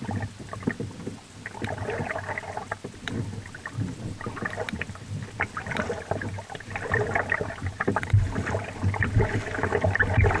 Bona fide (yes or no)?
yes